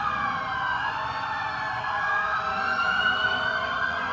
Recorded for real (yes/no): no